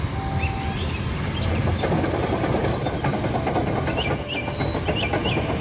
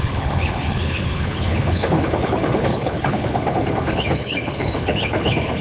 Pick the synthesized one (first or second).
second